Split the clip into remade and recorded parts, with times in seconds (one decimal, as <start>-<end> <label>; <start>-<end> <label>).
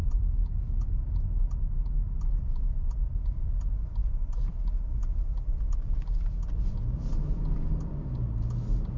0.0-9.0 recorded